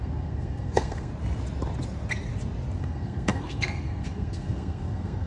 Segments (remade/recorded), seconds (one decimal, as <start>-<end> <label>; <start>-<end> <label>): 0.0-1.1 remade; 1.1-2.8 recorded; 2.8-5.3 remade